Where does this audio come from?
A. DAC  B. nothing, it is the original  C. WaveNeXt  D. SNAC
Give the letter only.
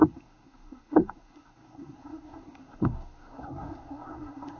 D